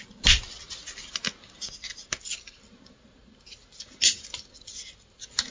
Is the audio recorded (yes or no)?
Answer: yes